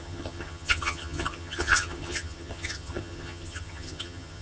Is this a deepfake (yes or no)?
yes